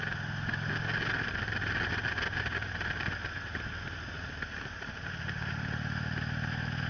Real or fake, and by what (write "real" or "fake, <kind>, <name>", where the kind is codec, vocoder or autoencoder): real